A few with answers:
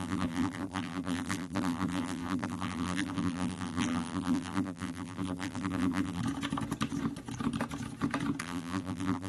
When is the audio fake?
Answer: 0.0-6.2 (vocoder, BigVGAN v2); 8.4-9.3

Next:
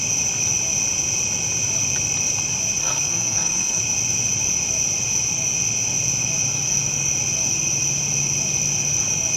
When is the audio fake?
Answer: 2.8-3.8 (codec, SNAC)

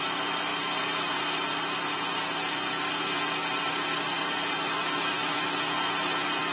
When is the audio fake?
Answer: none

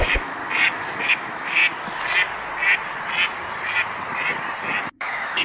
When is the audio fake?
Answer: 0.0-0.4 (autoencoder, DAC-VAE); 1.1-1.6; 4.8-5.4

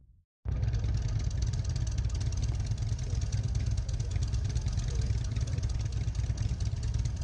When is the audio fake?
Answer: none